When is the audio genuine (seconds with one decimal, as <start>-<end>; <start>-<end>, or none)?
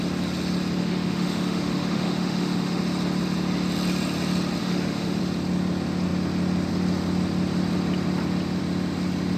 0.0-0.8; 2.8-4.6; 5.2-9.4